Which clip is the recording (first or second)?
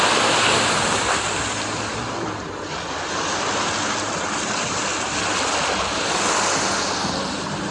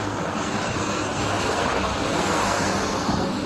first